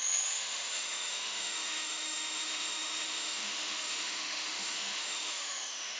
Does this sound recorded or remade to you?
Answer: remade